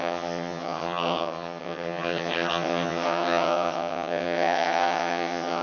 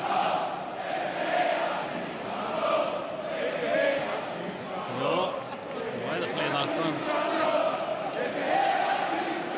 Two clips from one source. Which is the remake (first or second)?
first